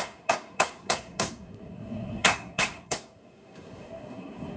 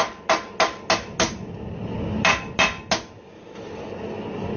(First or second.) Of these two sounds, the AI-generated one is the first